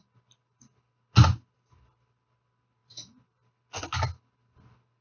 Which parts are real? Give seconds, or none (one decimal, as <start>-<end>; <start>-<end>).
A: 0.0-5.0